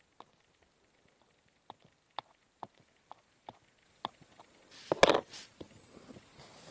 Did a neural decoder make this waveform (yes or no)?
no